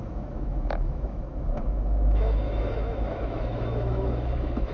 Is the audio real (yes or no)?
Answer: no